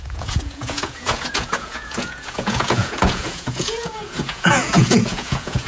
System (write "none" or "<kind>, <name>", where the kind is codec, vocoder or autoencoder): vocoder, Vocos